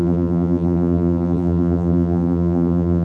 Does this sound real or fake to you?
fake